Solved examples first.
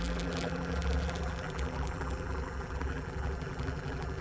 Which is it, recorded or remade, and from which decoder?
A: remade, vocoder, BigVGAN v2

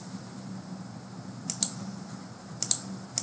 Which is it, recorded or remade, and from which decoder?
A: recorded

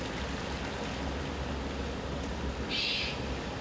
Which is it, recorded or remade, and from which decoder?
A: recorded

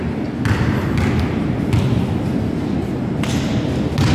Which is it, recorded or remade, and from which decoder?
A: recorded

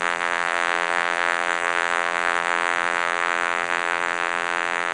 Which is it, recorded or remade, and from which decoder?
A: remade, vocoder, BigVGAN v2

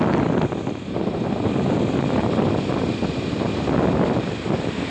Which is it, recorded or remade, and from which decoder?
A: recorded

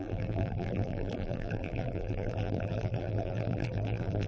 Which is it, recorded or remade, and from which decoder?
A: remade, vocoder, BigVGAN v2